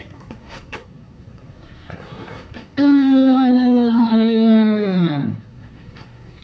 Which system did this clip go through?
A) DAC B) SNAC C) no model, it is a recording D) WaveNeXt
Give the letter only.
B